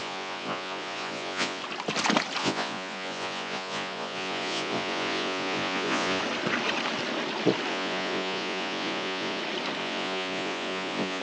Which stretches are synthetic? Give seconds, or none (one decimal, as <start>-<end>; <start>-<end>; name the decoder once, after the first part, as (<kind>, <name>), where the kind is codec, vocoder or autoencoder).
0.0-1.6 (vocoder, Vocos); 2.4-6.2; 7.7-9.4; 9.8-11.2